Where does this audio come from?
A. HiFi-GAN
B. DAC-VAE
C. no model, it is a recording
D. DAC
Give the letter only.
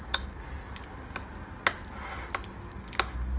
C